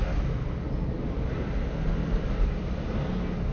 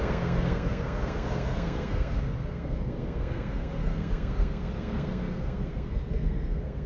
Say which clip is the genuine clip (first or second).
first